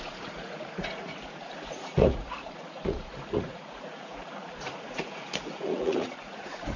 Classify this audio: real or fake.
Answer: fake